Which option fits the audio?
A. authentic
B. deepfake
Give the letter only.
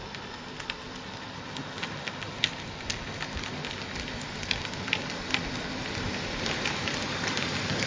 A